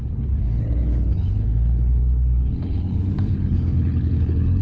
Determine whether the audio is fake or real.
fake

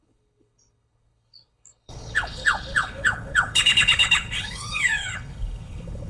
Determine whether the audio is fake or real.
fake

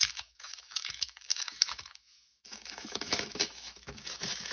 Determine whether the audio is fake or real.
fake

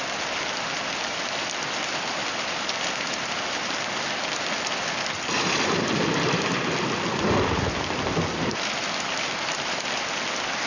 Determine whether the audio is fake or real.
real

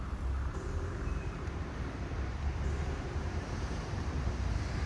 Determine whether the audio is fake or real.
fake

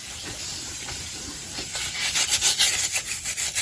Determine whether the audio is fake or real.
real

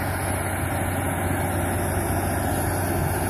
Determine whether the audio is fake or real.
real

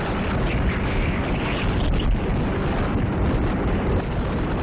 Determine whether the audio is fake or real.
real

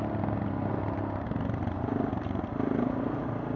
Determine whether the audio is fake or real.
real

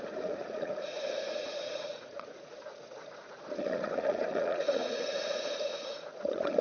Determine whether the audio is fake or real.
fake